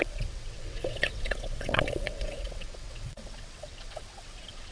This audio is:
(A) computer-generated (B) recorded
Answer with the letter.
A